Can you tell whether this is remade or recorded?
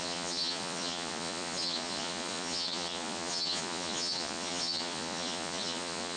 remade